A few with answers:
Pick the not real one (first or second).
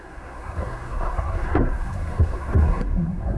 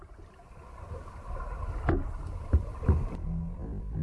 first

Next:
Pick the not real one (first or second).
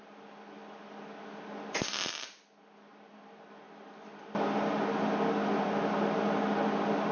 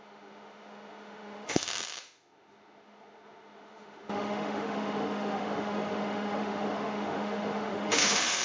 second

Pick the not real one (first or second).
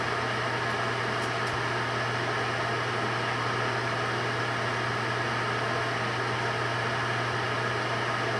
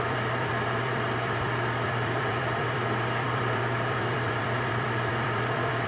second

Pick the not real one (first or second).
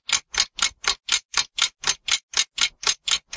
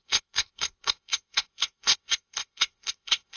second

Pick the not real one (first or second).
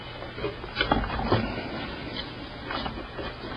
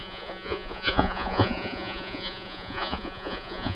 second